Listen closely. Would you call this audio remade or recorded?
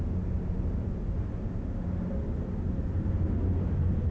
recorded